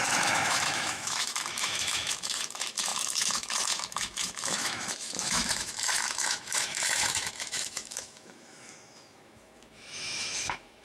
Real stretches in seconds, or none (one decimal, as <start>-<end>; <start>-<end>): none